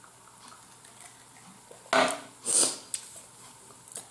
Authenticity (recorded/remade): recorded